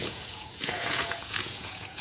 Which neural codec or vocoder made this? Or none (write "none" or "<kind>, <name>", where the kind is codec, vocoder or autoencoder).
vocoder, Vocos